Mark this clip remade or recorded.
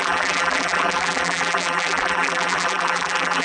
remade